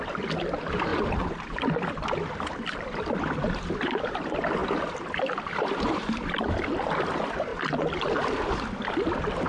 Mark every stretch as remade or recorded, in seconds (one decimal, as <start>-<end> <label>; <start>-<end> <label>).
0.0-9.5 remade